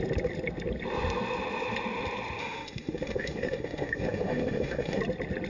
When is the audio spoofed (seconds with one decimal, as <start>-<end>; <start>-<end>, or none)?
2.4-5.0